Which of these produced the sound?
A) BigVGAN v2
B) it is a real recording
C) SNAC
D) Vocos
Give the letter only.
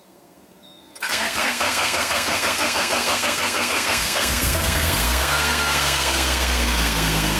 C